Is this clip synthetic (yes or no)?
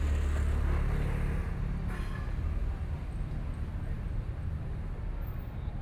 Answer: no